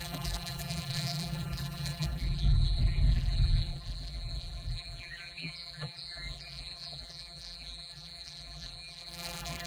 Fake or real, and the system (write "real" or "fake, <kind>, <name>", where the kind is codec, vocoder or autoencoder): fake, vocoder, BigVGAN v2